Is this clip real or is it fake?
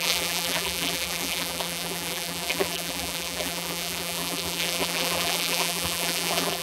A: fake